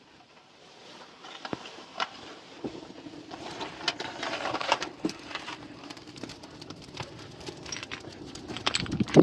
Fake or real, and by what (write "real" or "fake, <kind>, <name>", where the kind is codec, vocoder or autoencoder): fake, vocoder, BigVGAN v2